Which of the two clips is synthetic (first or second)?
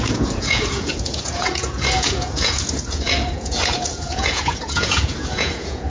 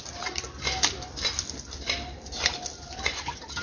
first